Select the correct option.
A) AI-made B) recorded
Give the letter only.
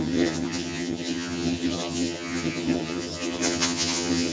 A